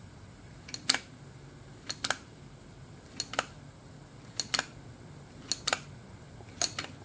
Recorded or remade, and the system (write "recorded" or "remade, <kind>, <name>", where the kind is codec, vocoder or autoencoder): recorded